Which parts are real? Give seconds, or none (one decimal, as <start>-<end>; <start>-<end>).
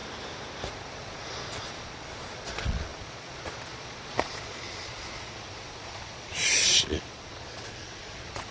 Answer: 0.0-0.7